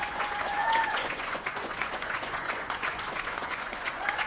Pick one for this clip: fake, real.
fake